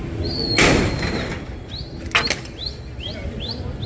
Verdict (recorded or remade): recorded